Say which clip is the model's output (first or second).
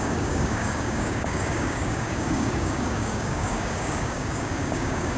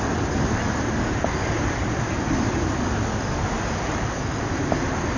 first